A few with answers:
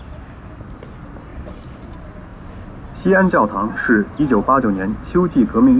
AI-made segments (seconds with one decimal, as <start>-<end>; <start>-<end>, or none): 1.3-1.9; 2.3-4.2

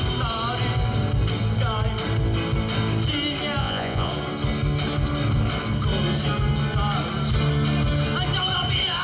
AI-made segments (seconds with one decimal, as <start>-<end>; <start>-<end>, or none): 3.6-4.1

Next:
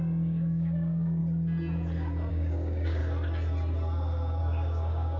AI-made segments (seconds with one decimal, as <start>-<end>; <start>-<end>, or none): 0.0-1.2; 2.3-3.0; 4.4-5.2

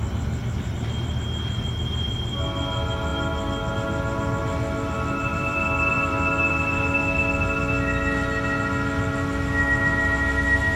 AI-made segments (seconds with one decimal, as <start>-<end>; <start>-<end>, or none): 5.3-6.5

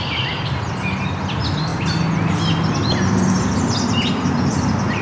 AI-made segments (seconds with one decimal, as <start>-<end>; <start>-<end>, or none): none